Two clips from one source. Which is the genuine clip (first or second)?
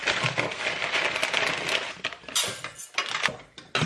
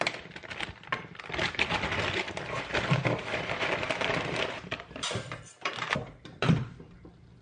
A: first